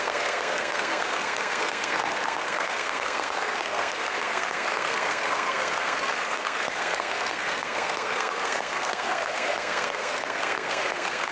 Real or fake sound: fake